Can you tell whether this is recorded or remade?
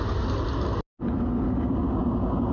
recorded